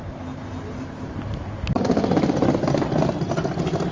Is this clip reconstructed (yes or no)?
no